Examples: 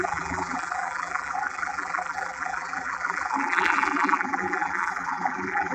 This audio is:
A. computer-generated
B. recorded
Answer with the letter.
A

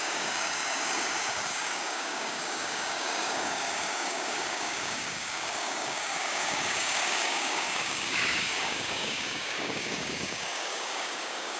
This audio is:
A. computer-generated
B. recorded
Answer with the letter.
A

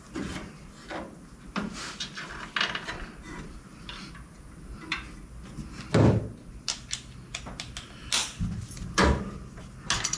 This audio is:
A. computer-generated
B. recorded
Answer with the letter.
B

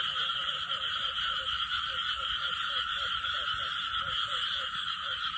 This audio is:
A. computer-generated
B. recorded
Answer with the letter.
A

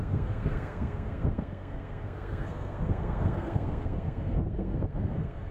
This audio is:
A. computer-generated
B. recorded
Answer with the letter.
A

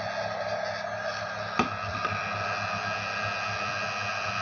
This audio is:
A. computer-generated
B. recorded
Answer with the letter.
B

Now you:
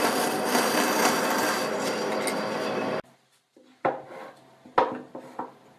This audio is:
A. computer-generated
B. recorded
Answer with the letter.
B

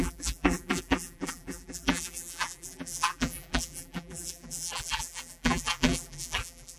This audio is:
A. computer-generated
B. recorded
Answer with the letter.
A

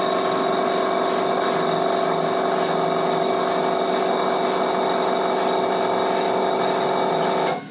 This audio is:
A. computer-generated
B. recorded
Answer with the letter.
B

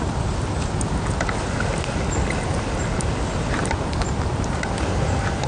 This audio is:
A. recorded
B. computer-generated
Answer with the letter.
A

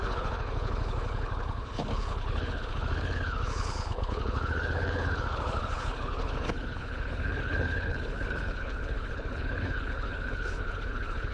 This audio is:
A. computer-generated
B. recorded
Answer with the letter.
A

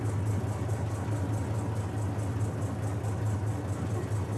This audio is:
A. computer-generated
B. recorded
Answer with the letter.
B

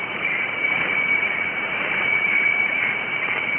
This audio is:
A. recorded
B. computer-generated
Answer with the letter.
B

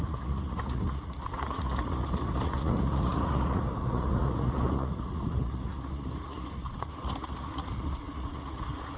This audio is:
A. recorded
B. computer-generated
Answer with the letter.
B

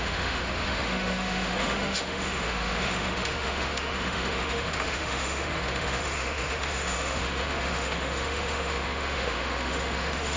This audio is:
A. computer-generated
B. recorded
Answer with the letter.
A